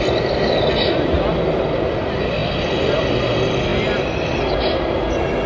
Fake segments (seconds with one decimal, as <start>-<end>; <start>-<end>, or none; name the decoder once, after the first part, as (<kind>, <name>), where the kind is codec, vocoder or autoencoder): none